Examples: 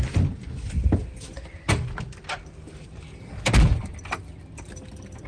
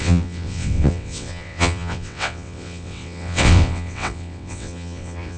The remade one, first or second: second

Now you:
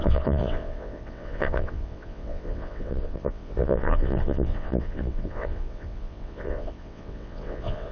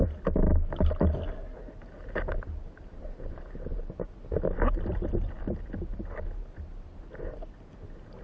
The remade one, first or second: first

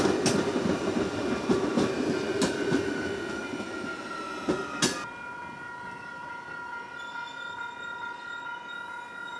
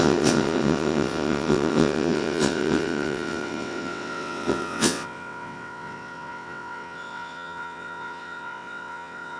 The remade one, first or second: second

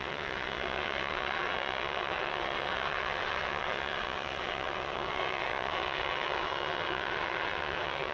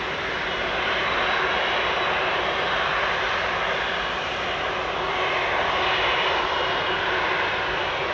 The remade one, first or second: first